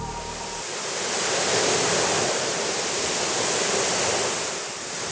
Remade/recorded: recorded